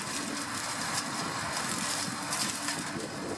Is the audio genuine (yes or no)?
yes